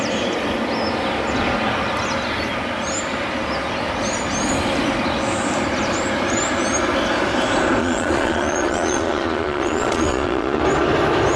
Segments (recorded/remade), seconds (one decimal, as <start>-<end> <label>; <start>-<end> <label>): 0.0-7.8 recorded; 7.8-10.6 remade; 10.6-11.4 recorded